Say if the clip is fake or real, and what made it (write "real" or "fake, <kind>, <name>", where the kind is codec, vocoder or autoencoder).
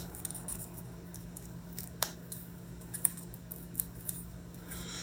fake, codec, DAC